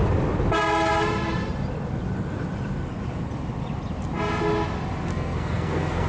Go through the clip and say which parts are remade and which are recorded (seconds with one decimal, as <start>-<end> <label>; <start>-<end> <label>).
0.0-5.1 recorded; 5.1-6.1 remade